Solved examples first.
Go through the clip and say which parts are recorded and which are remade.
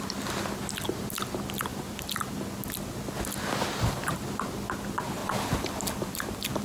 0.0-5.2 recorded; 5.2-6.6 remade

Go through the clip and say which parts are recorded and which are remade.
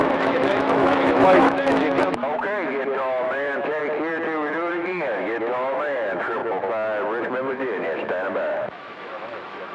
0.0-3.8 remade; 3.8-4.7 recorded; 4.7-6.4 remade; 6.4-7.2 recorded; 7.2-9.7 remade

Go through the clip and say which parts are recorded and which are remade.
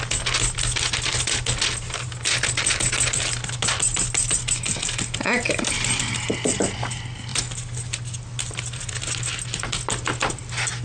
0.0-10.8 recorded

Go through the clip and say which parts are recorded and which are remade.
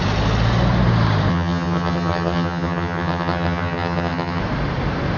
0.0-1.3 recorded; 1.3-4.4 remade; 4.4-5.2 recorded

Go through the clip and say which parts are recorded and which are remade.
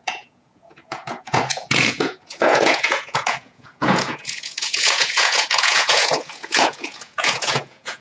0.0-8.0 remade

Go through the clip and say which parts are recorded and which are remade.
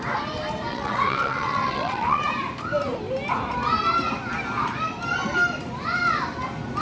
0.0-0.7 recorded; 0.7-2.2 remade; 2.2-6.8 recorded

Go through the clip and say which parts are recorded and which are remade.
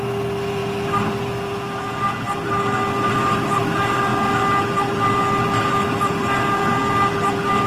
0.0-7.7 recorded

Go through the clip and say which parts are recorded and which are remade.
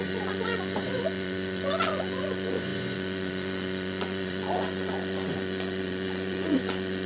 0.0-7.1 remade